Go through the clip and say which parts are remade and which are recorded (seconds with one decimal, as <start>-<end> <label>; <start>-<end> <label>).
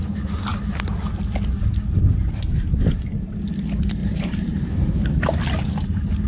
0.0-4.0 recorded; 4.0-4.7 remade; 4.7-6.3 recorded